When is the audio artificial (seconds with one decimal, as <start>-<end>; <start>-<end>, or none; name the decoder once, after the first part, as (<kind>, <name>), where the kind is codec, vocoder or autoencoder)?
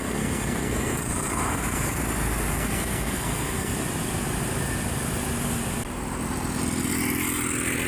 0.0-2.0 (codec, SNAC); 2.5-3.7